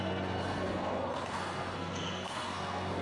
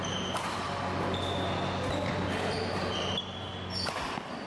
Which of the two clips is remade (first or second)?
first